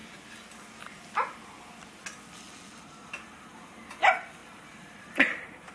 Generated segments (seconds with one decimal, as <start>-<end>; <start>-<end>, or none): 4.4-5.7